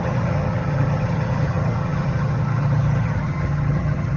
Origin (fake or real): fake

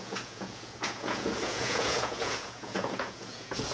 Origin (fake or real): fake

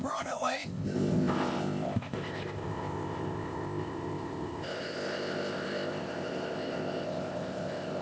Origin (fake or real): fake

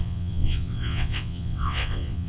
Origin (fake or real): fake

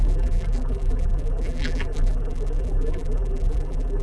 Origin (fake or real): fake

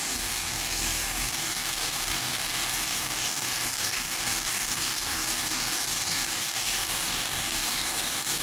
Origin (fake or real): fake